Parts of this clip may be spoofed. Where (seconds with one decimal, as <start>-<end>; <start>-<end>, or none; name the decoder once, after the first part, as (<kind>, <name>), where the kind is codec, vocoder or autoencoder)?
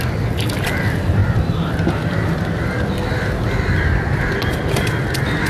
none